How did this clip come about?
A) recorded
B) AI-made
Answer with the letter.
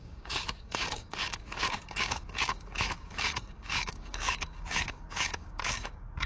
B